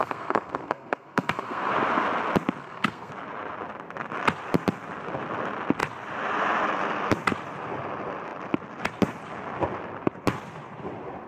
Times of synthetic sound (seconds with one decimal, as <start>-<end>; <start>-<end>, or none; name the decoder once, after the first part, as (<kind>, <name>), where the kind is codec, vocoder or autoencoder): 0.0-1.7 (codec, SNAC); 2.6-3.1